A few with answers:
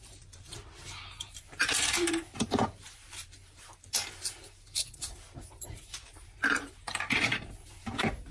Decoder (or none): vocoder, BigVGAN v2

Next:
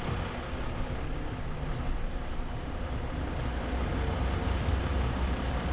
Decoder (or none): none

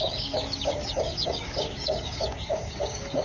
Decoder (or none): codec, DAC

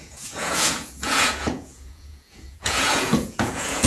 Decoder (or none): vocoder, Vocos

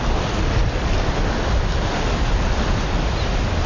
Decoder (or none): none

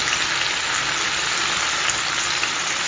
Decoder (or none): none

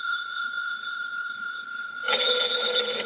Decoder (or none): codec, HILCodec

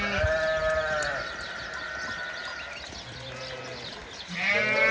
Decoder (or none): none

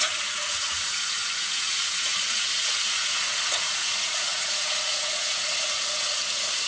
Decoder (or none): vocoder, Vocos